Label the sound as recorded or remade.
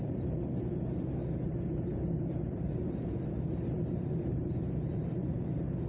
remade